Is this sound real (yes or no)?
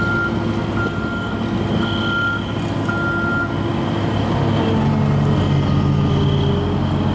yes